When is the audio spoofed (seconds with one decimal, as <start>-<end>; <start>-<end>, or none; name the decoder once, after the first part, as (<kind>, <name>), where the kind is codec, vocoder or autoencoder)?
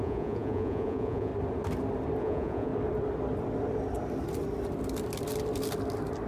0.0-1.3 (vocoder, Vocos); 2.2-2.7